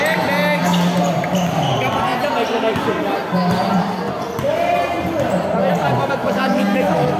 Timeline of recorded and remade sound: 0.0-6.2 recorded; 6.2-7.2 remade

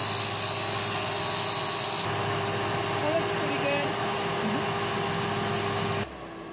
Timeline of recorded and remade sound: 0.0-6.5 recorded

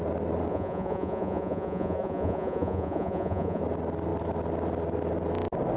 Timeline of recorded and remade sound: 0.0-0.5 recorded; 0.5-3.6 remade; 3.6-5.8 recorded

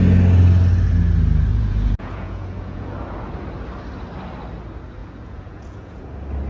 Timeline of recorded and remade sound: 0.0-1.5 recorded; 1.5-2.9 remade; 2.9-5.0 recorded; 5.0-6.1 remade; 6.1-6.5 recorded

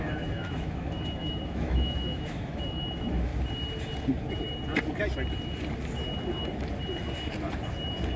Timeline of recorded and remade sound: 0.0-3.3 remade; 3.3-8.2 recorded

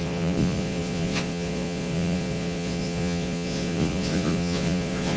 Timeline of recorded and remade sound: 0.0-5.2 remade

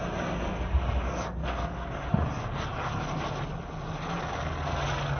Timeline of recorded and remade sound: 0.0-1.4 recorded; 1.4-1.9 remade; 1.9-5.2 recorded

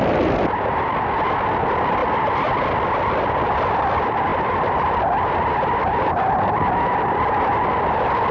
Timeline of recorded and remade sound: 0.0-8.3 recorded